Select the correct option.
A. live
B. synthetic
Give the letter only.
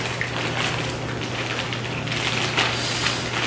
A